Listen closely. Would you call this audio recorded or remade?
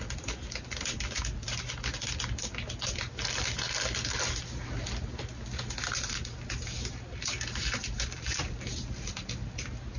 recorded